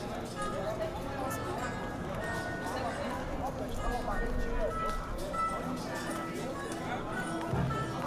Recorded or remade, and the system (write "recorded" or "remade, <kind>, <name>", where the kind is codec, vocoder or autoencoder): recorded